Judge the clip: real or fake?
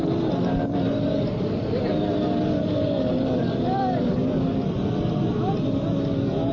real